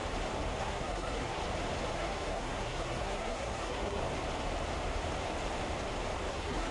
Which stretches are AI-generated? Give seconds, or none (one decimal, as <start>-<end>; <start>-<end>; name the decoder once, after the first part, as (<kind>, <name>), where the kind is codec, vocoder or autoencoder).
0.6-1.4 (codec, SNAC); 1.9-4.0; 6.3-6.7